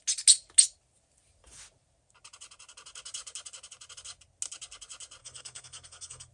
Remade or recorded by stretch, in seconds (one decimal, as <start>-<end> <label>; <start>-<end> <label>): 0.0-5.2 recorded; 5.2-6.3 remade

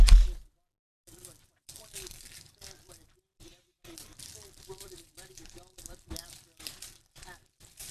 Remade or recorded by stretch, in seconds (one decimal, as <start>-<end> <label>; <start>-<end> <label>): 0.0-1.0 recorded; 1.0-7.9 remade

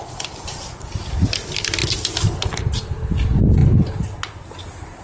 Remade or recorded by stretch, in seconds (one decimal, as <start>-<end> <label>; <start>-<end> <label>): 0.0-5.0 recorded

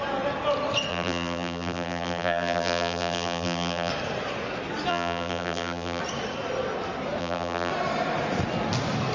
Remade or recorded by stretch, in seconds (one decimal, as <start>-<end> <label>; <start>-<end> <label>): 0.0-0.9 recorded; 0.9-3.9 remade; 3.9-4.9 recorded; 4.9-6.0 remade; 6.0-7.2 recorded; 7.2-7.7 remade; 7.7-9.1 recorded